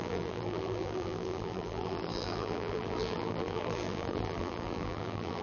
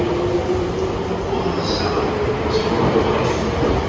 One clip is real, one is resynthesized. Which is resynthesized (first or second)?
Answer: first